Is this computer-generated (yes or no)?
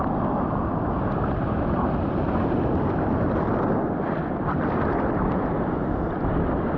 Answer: no